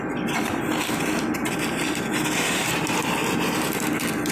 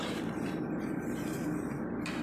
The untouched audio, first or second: first